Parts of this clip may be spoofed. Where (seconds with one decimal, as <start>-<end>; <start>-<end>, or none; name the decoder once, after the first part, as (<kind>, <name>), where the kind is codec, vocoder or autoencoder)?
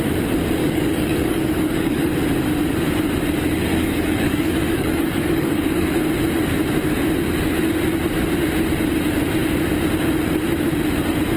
0.6-2.1 (codec, DAC); 3.7-6.0